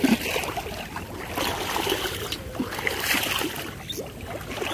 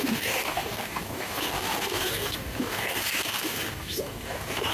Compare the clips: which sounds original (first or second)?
first